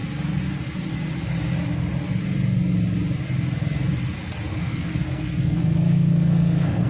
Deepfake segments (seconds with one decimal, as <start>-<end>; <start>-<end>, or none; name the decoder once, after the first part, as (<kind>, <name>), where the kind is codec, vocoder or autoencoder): 4.5-6.9 (codec, SNAC)